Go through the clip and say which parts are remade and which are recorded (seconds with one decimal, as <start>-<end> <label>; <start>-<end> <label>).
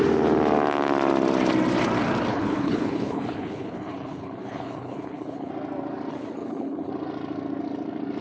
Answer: 0.0-2.3 recorded; 2.3-5.5 remade; 5.5-6.1 recorded; 6.1-6.9 remade; 6.9-8.2 recorded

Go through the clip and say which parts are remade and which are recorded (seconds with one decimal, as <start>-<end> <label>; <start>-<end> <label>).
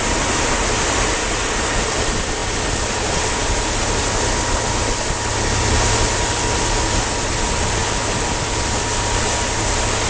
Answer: 0.0-10.1 recorded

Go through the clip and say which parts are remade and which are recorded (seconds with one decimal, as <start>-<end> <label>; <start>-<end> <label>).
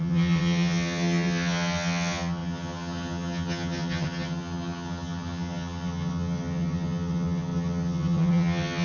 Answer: 0.0-8.8 remade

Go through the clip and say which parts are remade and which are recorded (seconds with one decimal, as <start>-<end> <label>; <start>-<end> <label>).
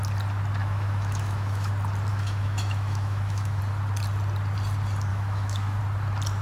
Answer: 0.0-0.6 recorded; 0.6-1.7 remade; 1.7-2.1 recorded; 2.1-3.6 remade; 3.6-5.1 recorded; 5.1-5.8 remade; 5.8-6.4 recorded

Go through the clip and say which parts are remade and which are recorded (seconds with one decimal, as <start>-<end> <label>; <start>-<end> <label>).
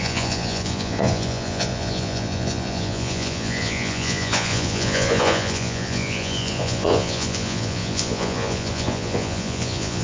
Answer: 0.0-10.0 remade